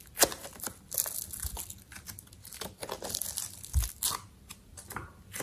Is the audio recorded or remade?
recorded